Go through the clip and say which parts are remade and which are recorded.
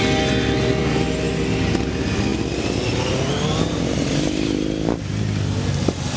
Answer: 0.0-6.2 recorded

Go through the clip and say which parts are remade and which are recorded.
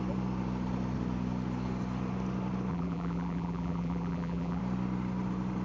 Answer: 0.0-2.7 recorded; 2.7-4.6 remade; 4.6-5.6 recorded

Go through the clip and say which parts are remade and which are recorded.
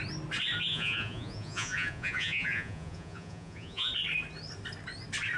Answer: 0.0-0.7 recorded; 0.7-3.9 remade; 3.9-5.4 recorded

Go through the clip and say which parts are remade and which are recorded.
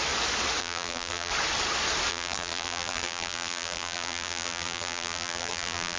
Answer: 0.0-0.6 recorded; 0.6-1.3 remade; 1.3-2.1 recorded; 2.1-6.0 remade